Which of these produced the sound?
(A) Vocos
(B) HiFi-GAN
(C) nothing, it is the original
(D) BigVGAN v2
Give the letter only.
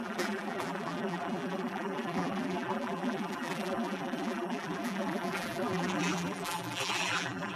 D